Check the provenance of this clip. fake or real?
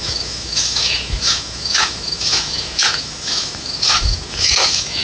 fake